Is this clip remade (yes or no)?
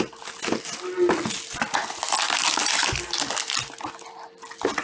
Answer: no